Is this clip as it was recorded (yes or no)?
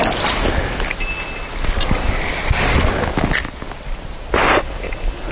yes